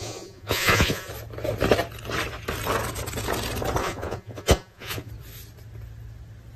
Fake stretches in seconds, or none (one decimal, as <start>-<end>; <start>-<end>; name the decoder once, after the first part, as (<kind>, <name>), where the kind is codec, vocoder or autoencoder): 0.0-1.1 (vocoder, Vocos); 3.8-5.1